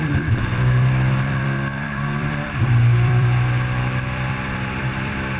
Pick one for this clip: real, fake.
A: fake